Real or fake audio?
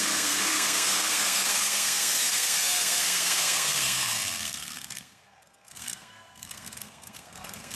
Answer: fake